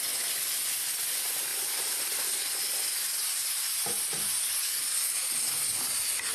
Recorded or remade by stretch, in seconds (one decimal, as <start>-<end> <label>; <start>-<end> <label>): 0.0-6.3 recorded